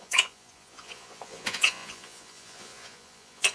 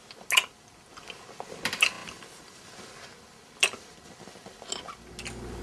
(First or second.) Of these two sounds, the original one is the second